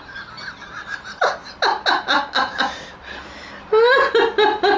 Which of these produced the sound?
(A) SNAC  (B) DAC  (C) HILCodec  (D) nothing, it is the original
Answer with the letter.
D